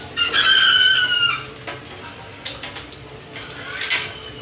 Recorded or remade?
recorded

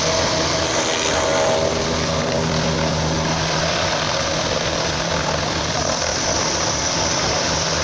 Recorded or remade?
recorded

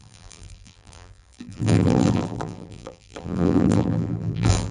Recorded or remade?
remade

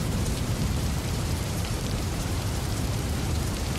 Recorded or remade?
remade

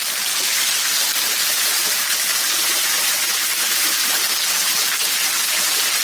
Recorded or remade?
recorded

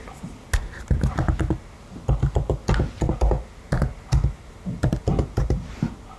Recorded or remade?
recorded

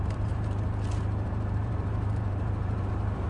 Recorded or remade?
remade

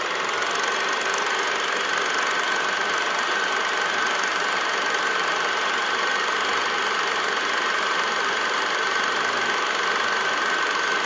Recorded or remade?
recorded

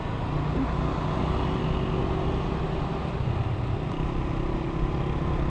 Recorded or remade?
recorded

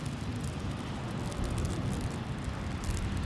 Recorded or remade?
recorded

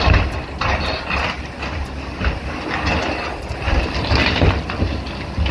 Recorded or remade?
recorded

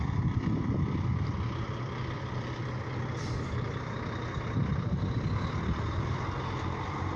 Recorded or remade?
remade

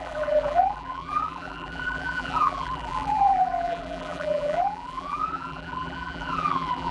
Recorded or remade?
remade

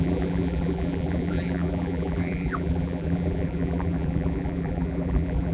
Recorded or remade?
remade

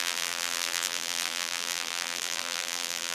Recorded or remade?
remade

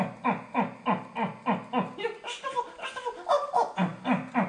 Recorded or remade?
recorded